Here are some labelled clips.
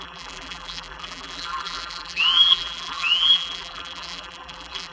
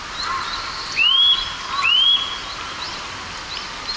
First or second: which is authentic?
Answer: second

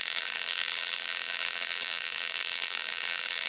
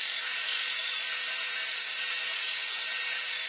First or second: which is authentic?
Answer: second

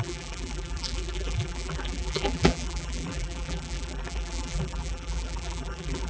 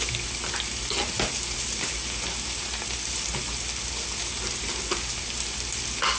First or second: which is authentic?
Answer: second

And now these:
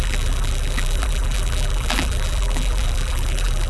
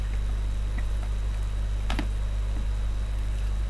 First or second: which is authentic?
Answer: second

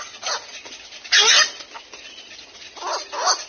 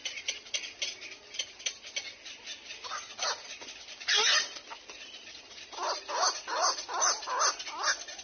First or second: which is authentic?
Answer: first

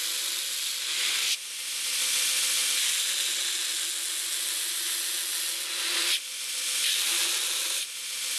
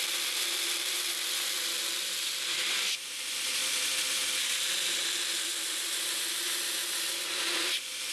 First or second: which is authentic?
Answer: first